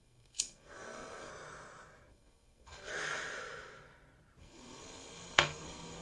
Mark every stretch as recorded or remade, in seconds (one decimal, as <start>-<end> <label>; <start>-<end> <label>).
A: 0.0-1.3 remade; 1.3-2.1 recorded; 2.1-2.9 remade; 2.9-4.4 recorded; 4.4-6.0 remade